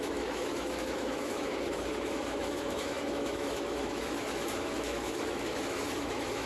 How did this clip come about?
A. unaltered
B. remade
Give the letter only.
B